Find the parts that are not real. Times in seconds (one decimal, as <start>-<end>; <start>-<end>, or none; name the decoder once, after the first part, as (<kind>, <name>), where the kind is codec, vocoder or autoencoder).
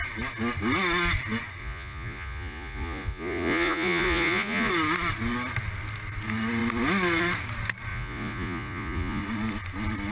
1.6-4.7 (vocoder, Vocos); 7.9-9.2